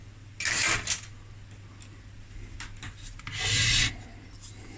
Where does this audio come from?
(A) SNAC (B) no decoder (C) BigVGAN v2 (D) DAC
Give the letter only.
B